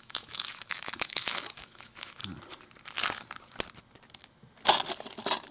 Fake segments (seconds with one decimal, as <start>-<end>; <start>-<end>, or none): 0.0-2.2